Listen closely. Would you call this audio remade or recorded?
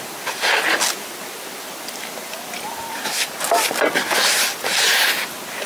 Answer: recorded